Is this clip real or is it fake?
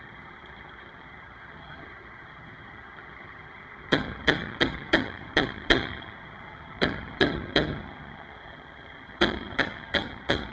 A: fake